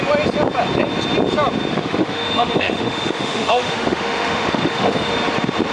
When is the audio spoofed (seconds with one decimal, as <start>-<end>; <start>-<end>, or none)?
1.7-5.1